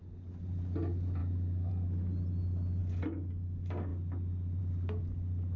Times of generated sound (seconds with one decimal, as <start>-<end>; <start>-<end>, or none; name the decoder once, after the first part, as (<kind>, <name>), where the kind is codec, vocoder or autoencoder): 1.2-1.7 (autoencoder, DAC-VAE)